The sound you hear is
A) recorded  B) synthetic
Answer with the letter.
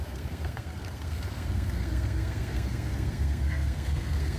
B